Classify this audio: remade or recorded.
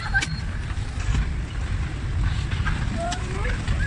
remade